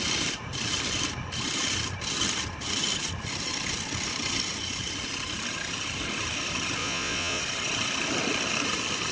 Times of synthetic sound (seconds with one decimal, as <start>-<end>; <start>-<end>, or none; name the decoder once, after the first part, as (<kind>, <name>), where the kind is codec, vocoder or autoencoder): 6.8-7.4 (vocoder, Vocos)